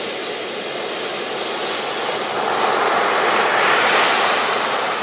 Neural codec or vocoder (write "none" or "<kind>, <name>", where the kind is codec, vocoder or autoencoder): none